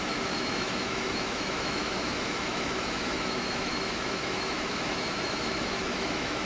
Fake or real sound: fake